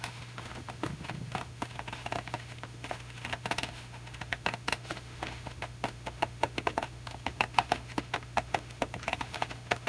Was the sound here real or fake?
fake